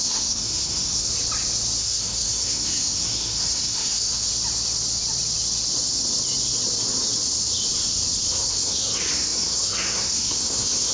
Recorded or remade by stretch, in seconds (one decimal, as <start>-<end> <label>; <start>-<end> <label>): 0.0-1.1 remade; 1.1-1.8 recorded; 1.8-4.3 remade; 4.3-8.3 recorded; 8.3-10.9 remade